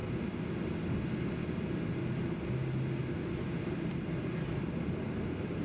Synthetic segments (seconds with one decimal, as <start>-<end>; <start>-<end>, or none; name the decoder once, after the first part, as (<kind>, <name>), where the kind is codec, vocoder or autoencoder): none